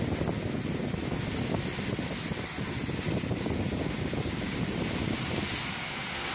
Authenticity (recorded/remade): recorded